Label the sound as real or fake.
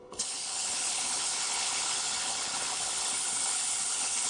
fake